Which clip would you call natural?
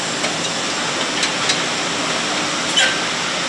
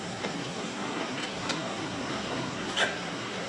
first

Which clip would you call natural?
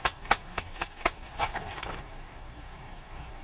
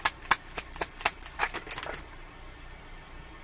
second